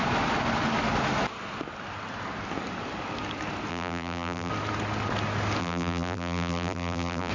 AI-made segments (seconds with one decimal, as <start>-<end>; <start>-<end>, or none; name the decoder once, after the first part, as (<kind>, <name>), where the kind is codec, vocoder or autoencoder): 3.7-4.5 (vocoder, BigVGAN v2); 5.6-7.3